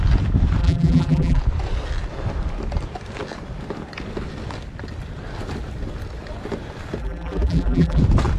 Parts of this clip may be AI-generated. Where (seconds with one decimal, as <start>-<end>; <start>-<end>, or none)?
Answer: 0.6-1.4; 7.0-8.0